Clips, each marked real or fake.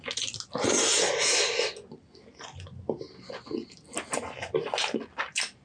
real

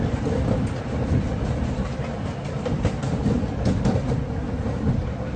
real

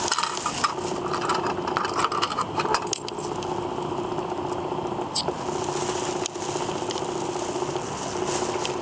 real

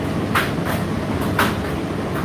real